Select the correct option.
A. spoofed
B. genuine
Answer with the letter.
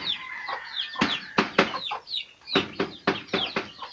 B